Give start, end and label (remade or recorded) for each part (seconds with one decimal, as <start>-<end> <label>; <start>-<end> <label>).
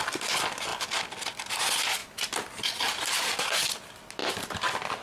0.0-2.0 recorded; 2.0-3.2 remade; 3.2-4.2 recorded; 4.2-5.0 remade